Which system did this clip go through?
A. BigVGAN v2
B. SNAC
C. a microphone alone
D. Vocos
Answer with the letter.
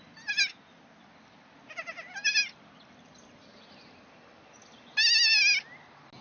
C